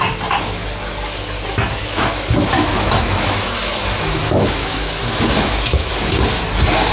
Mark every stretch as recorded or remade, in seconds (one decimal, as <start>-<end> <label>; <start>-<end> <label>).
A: 0.0-1.8 recorded; 1.8-5.9 remade; 5.9-6.9 recorded